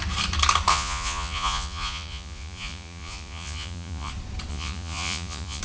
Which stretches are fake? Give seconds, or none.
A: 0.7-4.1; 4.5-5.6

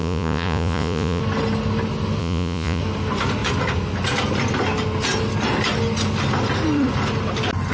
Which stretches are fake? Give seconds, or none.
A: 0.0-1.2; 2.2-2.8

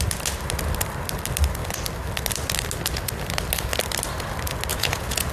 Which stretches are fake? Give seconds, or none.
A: 4.7-5.3

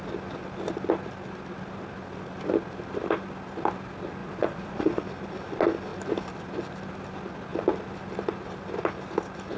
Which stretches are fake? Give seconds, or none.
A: 4.2-5.0

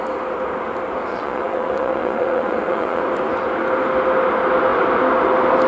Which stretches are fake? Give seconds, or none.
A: 1.1-3.0

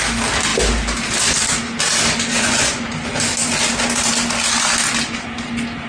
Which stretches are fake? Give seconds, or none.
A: 2.3-2.8

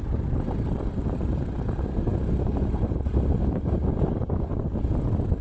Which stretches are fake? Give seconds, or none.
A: none

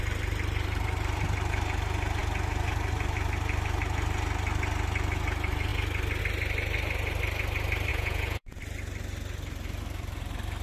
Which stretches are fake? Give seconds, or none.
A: 7.9-8.6